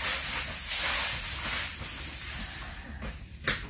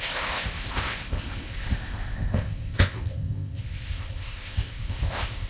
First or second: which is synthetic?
second